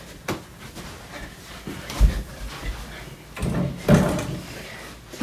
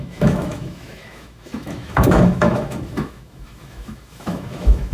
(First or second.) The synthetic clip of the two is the second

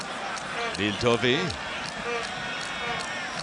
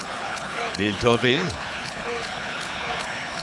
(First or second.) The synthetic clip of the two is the second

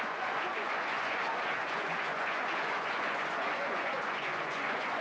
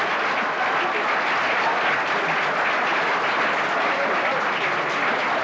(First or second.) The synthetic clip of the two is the first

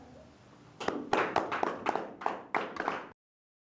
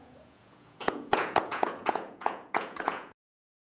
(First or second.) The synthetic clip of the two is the second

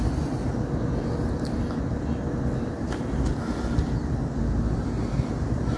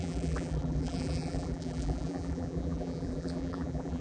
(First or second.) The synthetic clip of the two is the second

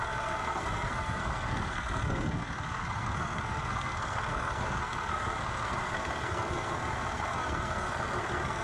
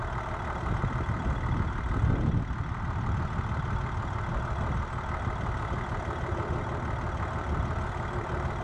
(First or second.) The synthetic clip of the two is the first